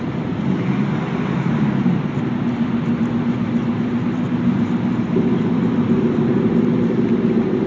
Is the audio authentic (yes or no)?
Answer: yes